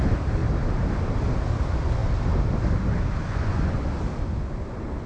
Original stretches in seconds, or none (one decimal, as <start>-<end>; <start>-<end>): 0.0-3.2; 3.8-5.1

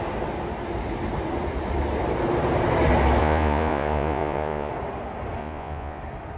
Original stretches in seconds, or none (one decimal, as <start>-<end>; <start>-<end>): 0.0-3.2; 4.7-5.4; 6.0-6.4

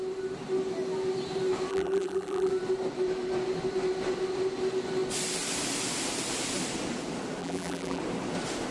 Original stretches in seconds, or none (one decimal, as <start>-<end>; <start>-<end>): 0.0-1.7; 2.5-7.4; 8.0-8.7

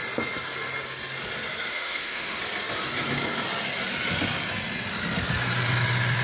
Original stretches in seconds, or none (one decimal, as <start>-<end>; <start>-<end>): 0.0-1.7; 2.4-6.2

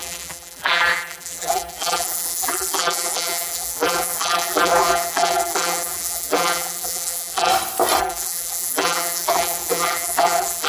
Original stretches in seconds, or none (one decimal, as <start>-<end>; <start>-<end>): 7.5-8.0

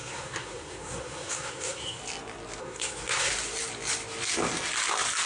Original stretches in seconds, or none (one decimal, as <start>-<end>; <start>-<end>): 2.0-2.6; 3.3-5.3